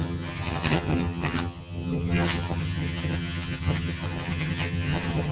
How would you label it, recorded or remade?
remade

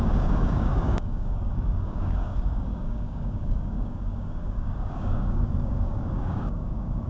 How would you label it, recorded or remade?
remade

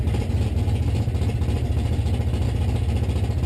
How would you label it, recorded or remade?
recorded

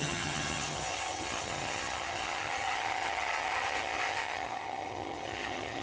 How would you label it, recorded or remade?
remade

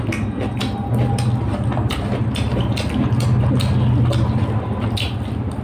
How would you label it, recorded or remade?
recorded